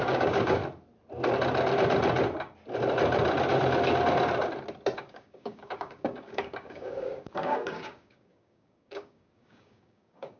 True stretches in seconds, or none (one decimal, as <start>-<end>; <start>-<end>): 0.6-5.0